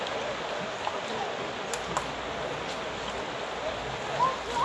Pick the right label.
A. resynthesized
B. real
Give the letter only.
B